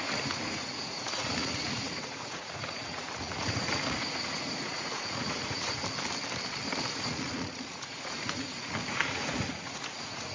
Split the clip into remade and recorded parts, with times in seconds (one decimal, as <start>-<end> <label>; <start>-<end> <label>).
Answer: 0.0-5.8 remade; 5.8-6.9 recorded; 6.9-10.3 remade